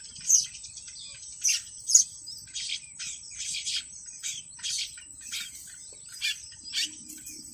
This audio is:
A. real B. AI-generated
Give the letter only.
A